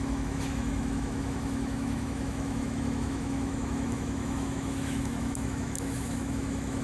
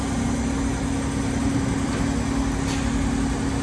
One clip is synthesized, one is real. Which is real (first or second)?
second